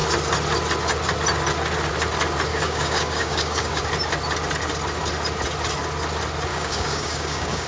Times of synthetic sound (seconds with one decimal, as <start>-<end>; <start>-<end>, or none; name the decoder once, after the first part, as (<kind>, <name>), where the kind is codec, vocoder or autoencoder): 2.5-3.8 (codec, DAC); 6.5-7.7